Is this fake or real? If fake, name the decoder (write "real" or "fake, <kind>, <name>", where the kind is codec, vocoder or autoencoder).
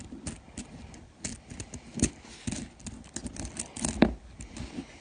real